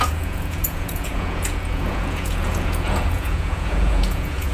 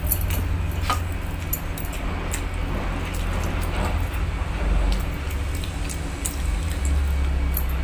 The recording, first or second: second